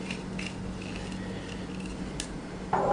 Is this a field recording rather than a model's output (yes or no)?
yes